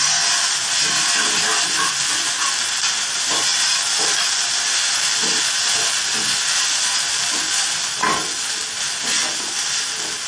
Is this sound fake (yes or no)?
no